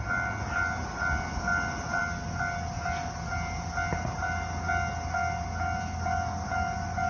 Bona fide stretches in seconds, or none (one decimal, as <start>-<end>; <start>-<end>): 0.0-7.1